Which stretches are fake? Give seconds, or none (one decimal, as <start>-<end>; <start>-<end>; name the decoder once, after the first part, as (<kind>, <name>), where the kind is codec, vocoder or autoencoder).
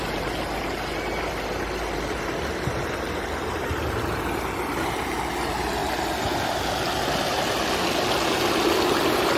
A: none